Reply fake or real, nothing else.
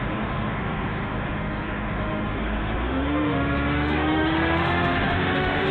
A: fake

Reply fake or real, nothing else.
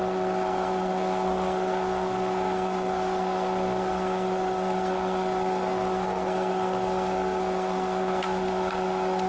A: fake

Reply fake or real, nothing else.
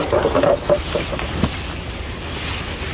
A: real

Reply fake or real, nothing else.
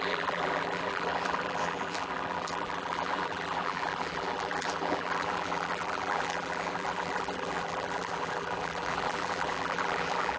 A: fake